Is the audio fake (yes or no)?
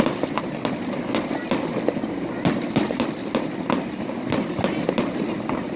no